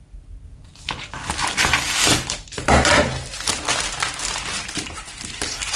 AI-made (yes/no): no